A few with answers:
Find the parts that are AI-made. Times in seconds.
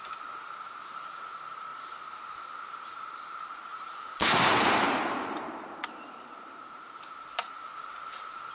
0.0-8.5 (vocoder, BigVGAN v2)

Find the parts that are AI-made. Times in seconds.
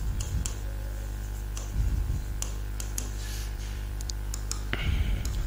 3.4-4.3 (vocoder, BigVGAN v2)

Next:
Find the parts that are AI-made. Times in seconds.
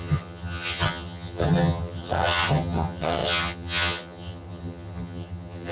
0.0-5.7 (vocoder, HiFi-GAN)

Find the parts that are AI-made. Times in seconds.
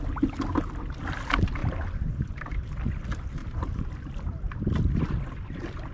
1.6-2.8 (vocoder, BigVGAN v2); 3.4-3.9